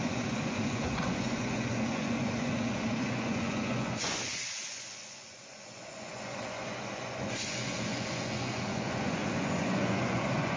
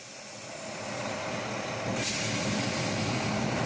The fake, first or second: first